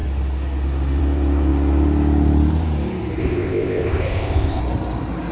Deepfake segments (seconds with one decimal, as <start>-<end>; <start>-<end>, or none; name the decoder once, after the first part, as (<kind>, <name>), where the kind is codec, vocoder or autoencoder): 3.2-4.6 (codec, ZipCodec)